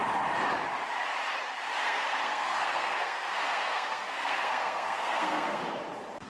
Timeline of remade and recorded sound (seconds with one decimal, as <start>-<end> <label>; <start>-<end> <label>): 0.0-1.8 recorded; 1.8-5.6 remade; 5.6-6.3 recorded